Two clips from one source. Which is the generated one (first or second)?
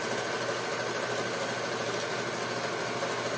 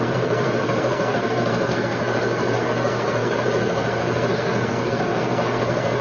second